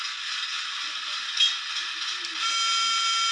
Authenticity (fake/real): real